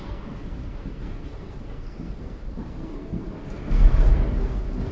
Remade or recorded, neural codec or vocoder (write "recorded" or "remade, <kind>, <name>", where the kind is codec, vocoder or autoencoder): remade, codec, SNAC